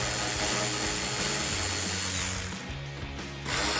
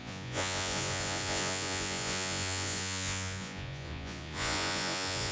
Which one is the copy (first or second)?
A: second